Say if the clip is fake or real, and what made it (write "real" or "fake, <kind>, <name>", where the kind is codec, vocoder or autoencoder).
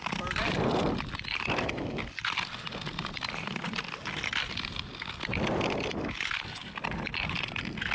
real